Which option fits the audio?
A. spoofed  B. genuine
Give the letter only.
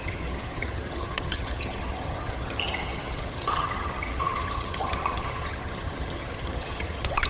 A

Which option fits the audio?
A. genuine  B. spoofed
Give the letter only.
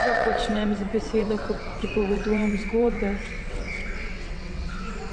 B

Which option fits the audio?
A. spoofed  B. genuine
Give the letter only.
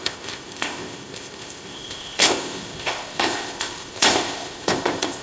A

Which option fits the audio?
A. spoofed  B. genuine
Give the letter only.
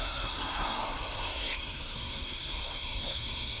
A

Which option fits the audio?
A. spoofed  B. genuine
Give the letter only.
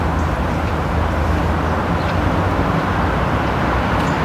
B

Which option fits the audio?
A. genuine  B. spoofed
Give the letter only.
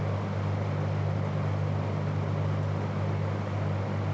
A